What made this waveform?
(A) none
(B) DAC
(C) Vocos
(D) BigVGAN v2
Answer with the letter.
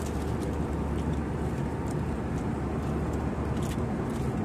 A